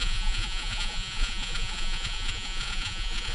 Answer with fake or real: fake